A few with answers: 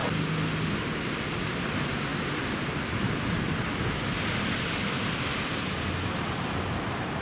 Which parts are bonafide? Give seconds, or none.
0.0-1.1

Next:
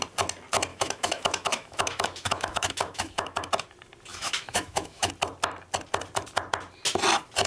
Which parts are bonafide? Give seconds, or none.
0.0-0.7; 3.5-4.1; 5.1-7.5

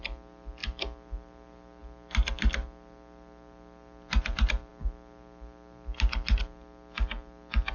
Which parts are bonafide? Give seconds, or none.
0.0-7.7

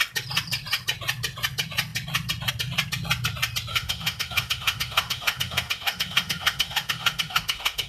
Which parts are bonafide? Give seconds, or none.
0.0-3.7